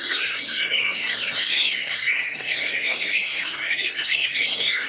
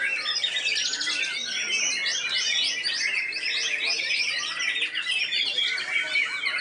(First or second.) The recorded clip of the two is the second